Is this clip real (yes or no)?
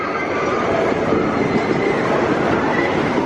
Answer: no